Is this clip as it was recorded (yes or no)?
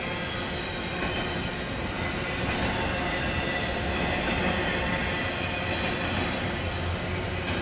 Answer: yes